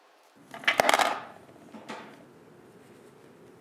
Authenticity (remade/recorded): recorded